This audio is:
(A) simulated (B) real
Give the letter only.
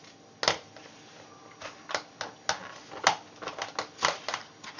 B